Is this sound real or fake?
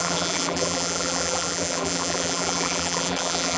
fake